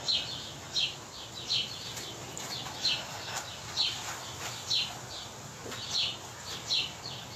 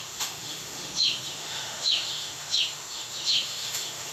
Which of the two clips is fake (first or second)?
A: second